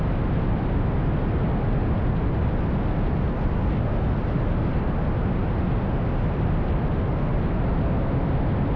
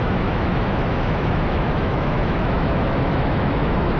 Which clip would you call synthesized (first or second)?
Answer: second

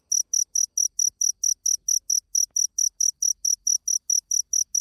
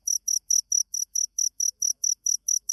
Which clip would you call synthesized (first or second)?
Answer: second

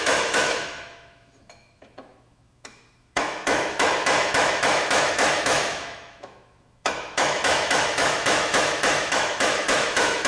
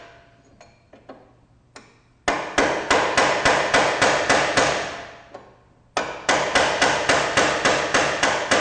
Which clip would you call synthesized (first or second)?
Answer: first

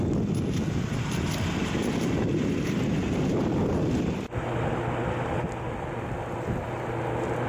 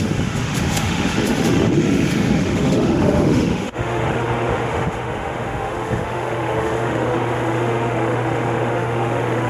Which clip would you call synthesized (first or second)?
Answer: second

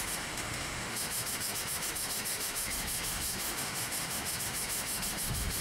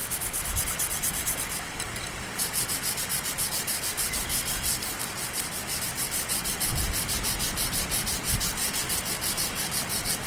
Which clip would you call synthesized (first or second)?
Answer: first